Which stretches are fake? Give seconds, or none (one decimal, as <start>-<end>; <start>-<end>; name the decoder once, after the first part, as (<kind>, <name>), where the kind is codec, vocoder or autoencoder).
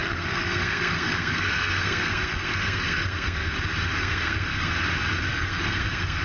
0.0-3.5 (codec, SNAC); 4.0-4.7; 5.3-6.2